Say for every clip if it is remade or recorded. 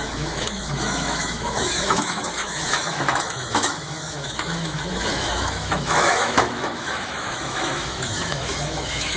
remade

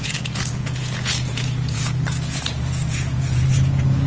remade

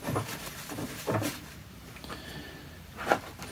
recorded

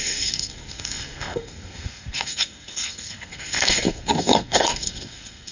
remade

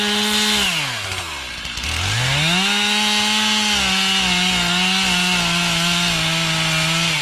recorded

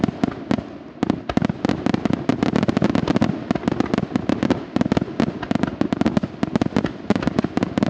recorded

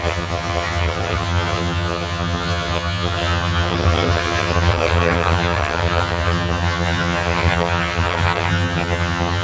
remade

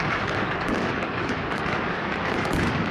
remade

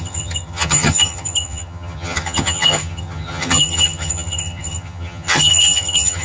remade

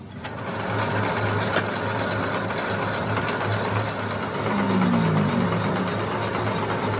recorded